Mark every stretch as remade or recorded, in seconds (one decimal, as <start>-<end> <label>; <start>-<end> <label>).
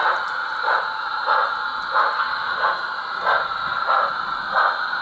0.0-5.0 recorded